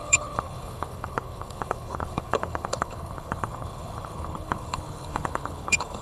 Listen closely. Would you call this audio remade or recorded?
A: remade